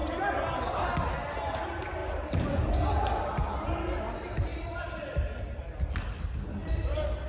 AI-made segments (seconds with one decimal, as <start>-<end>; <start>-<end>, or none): none